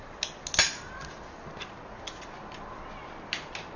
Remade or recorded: recorded